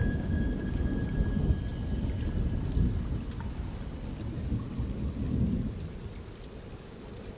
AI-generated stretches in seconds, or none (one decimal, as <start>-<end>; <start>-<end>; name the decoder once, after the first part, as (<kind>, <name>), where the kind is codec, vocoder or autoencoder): 0.0-0.8 (codec, DAC)